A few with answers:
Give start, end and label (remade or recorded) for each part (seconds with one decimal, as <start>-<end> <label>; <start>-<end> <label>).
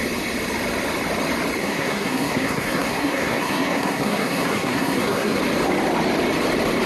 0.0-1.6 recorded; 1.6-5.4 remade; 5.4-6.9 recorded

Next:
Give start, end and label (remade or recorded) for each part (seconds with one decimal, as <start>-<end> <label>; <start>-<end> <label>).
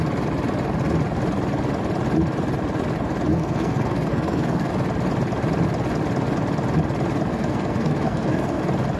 0.0-3.3 recorded; 3.3-4.7 remade; 4.7-7.3 recorded; 7.3-8.6 remade; 8.6-9.0 recorded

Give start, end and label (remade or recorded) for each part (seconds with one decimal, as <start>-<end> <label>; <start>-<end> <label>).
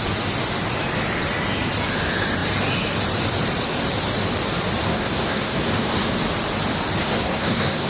0.0-4.8 recorded; 4.8-6.1 remade; 6.1-7.0 recorded; 7.0-7.9 remade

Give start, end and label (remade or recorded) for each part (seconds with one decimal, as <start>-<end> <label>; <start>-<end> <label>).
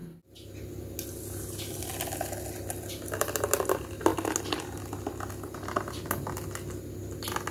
0.0-7.5 recorded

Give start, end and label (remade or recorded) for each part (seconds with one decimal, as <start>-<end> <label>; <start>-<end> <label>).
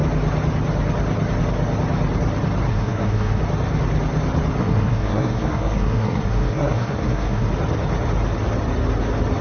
0.0-2.7 recorded; 2.7-3.4 remade; 3.4-4.6 recorded; 4.6-7.5 remade; 7.5-9.4 recorded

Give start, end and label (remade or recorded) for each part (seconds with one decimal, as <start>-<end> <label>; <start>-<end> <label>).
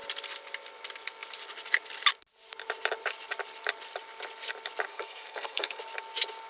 0.0-4.9 recorded; 4.9-5.8 remade; 5.8-6.5 recorded